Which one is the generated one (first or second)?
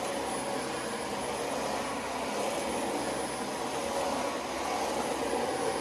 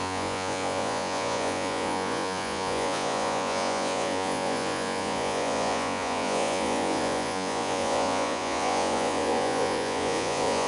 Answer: second